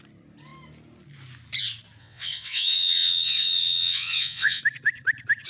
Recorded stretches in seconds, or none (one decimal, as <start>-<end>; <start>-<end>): 0.0-2.0; 4.6-5.5